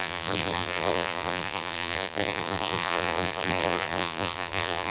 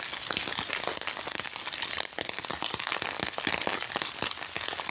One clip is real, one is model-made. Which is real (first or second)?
second